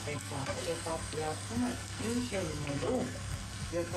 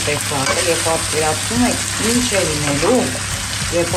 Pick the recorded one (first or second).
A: second